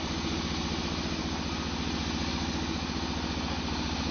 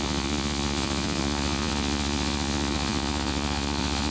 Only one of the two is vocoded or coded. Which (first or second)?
second